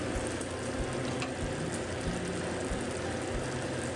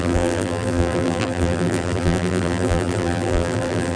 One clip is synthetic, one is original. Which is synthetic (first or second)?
second